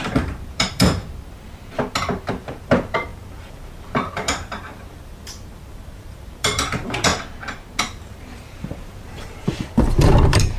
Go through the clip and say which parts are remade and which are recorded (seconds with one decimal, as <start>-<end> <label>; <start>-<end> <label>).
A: 0.0-1.0 remade; 1.0-2.3 recorded; 2.3-7.1 remade; 7.1-7.8 recorded; 7.8-10.6 remade